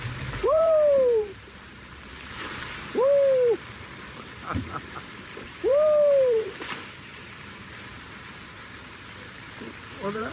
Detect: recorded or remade remade